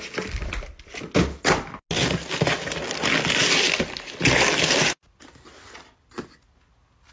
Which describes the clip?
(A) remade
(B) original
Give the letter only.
B